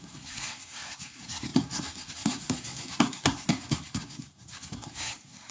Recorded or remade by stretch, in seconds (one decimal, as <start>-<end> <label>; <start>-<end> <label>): 0.0-5.5 remade